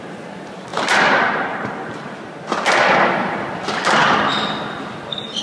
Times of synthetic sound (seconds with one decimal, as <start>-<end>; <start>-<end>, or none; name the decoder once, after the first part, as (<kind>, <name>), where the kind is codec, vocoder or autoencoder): 0.7-2.2 (vocoder, BigVGAN v2)